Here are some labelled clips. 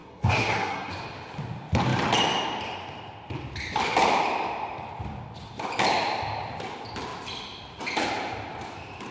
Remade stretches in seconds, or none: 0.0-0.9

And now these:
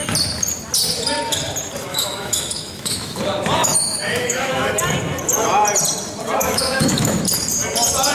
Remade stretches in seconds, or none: 1.9-3.2; 3.6-4.7; 6.4-7.2

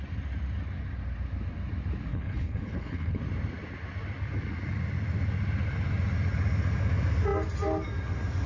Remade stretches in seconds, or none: 2.1-3.2

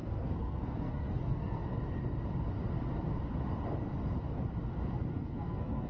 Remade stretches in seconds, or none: 0.0-1.6; 5.1-5.9

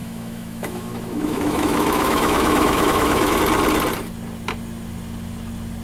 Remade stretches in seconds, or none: 0.0-3.4

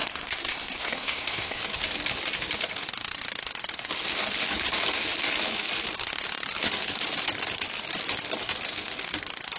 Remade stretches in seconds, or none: 0.0-1.6

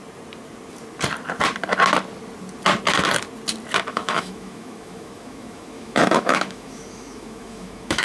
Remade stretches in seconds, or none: 3.9-8.0

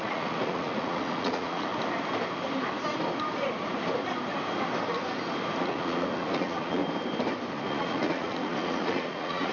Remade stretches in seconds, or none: 0.0-1.7; 5.6-6.8; 7.5-9.5